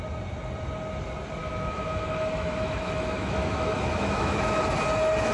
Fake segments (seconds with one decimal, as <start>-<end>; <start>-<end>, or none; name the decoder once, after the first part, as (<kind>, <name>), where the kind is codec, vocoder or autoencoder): 1.4-4.6 (autoencoder, DAC-VAE)